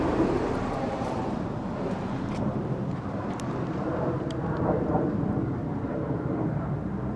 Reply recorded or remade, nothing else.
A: remade